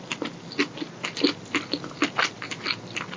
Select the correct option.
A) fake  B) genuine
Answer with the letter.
B